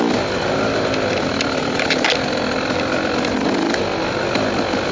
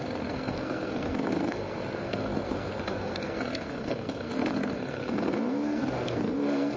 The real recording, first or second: first